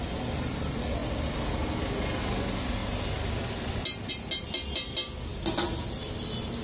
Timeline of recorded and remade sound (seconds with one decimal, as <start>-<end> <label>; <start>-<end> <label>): 0.0-6.6 recorded